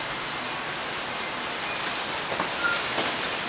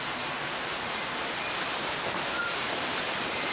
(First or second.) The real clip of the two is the first